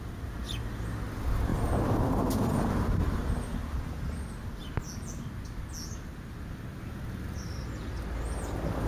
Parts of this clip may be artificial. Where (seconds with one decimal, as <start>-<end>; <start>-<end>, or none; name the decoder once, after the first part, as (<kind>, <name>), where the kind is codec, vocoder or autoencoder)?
none

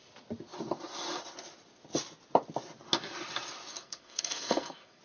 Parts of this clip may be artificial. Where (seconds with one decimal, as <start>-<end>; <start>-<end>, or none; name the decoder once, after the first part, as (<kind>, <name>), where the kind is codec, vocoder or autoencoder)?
3.7-5.0 (codec, SNAC)

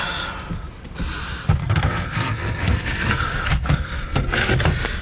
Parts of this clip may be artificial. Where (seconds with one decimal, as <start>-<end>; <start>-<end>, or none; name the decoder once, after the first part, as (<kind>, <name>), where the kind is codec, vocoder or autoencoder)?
1.6-4.6 (codec, SNAC)

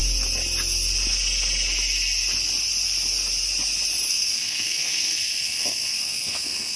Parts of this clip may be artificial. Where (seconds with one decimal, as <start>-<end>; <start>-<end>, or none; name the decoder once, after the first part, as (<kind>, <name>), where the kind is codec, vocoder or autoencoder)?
4.1-6.8 (codec, SNAC)

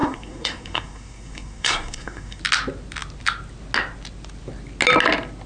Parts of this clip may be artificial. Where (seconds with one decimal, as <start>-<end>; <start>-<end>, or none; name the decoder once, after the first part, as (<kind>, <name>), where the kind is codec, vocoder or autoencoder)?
0.0-2.4 (codec, SNAC)

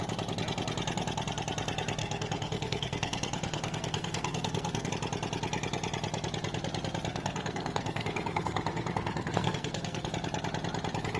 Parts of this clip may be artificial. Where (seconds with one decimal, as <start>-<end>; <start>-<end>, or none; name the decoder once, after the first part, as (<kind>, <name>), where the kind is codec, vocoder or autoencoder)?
2.0-4.9 (codec, SNAC); 7.1-10.1

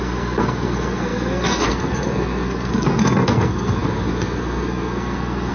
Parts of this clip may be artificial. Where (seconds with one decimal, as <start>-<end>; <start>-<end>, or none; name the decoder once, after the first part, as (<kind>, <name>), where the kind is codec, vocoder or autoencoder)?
0.0-5.5 (codec, SNAC)

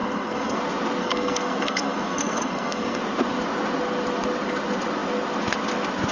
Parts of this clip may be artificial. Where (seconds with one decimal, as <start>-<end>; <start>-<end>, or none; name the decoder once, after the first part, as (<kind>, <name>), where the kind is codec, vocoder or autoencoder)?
0.0-0.6 (codec, SNAC); 1.0-3.0